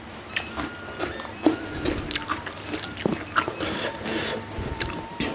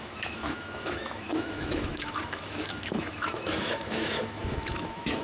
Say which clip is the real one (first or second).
first